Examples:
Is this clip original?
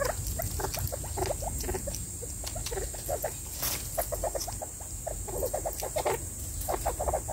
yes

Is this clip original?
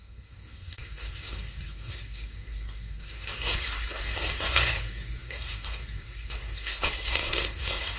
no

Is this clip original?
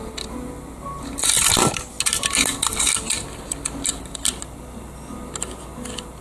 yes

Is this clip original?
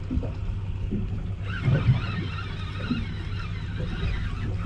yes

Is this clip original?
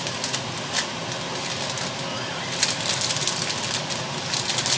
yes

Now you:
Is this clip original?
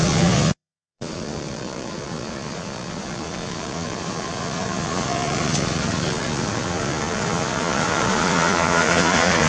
no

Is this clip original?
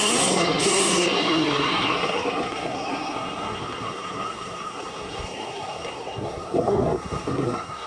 no